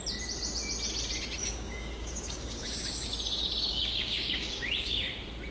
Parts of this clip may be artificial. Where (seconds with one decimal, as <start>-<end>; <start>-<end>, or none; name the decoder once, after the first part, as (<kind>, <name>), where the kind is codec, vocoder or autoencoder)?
1.4-3.1 (codec, DAC); 3.7-5.1